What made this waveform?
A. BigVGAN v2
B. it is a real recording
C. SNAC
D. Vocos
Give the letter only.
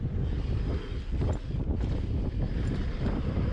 B